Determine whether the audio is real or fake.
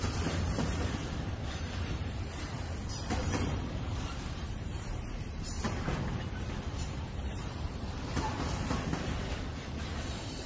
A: fake